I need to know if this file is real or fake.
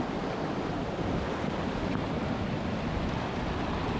real